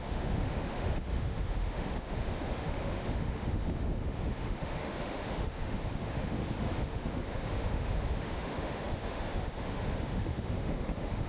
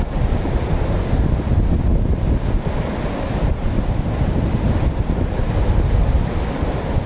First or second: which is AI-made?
first